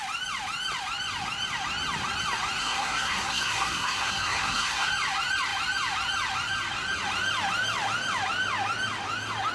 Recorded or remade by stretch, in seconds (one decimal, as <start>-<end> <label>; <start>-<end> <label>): 0.0-2.6 recorded; 2.6-4.9 remade; 4.9-9.5 recorded